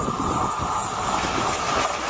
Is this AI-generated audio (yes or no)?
no